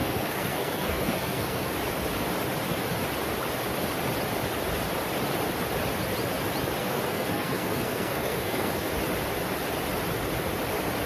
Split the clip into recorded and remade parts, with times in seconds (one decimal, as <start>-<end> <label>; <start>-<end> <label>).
0.0-1.7 remade; 1.7-6.8 recorded; 6.8-8.9 remade; 8.9-11.1 recorded